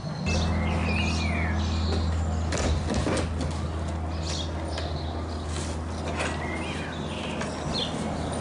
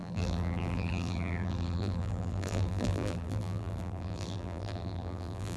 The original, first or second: first